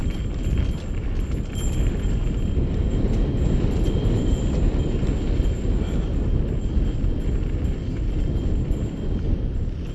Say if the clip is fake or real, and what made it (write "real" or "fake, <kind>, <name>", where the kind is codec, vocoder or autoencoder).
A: real